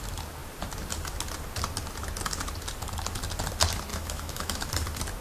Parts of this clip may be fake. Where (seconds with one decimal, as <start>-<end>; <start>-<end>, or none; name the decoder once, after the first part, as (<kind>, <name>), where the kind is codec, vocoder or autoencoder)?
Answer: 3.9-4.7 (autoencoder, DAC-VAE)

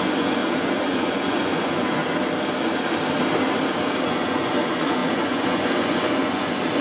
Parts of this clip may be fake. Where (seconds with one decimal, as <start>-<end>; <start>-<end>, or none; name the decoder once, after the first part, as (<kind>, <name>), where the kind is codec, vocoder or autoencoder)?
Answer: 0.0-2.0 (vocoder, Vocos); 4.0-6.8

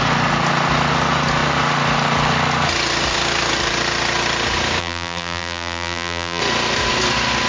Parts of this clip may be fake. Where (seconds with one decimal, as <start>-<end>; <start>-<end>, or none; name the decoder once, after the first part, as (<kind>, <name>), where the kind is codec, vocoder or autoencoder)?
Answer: 4.8-6.4 (vocoder, BigVGAN v2)

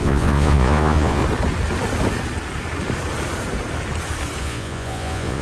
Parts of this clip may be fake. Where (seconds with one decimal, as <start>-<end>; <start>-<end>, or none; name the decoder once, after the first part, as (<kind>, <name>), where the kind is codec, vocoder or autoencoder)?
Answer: 0.0-1.2 (vocoder, Vocos); 4.4-5.4

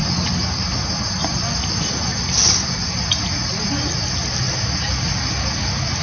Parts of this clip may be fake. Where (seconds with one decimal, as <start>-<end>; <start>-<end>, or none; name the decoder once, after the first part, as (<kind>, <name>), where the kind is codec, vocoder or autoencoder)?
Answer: none

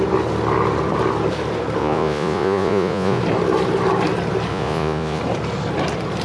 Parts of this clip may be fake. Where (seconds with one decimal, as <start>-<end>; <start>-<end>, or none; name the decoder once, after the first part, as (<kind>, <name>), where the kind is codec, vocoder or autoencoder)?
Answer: 1.8-3.2 (vocoder, Vocos); 4.5-5.2